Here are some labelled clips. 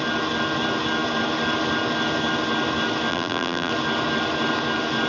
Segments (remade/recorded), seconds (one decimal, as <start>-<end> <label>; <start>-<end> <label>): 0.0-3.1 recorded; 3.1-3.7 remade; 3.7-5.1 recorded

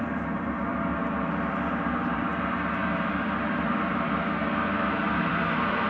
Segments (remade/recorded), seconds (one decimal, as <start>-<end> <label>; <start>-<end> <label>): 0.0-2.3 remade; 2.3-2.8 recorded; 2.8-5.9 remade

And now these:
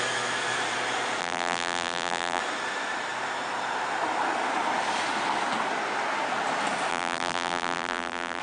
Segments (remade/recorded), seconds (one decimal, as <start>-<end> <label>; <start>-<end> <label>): 0.0-1.2 recorded; 1.2-2.4 remade; 2.4-6.9 recorded; 6.9-8.4 remade